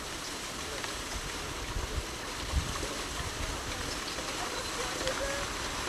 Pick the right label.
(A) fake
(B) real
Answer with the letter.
B